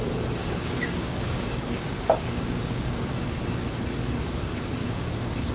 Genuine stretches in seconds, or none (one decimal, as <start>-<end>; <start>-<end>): 0.0-0.4; 3.4-4.8